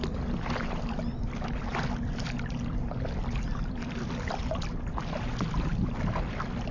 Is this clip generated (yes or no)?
no